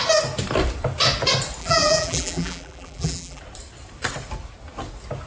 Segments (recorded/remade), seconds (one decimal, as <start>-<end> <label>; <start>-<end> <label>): 0.0-1.6 recorded; 1.6-3.4 remade; 3.4-5.3 recorded